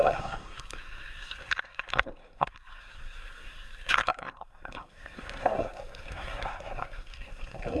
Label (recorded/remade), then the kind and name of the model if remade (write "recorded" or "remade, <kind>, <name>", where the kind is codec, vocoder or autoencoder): remade, codec, SNAC